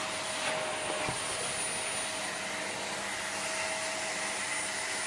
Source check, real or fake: real